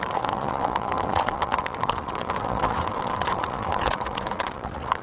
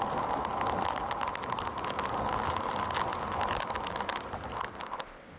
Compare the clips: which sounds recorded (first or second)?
second